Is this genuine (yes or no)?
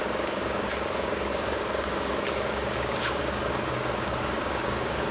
no